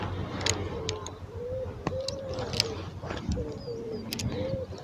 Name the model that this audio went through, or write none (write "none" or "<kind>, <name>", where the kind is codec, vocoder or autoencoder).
none